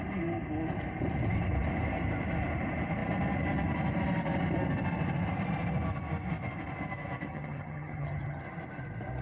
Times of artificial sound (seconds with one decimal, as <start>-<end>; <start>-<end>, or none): 7.3-8.4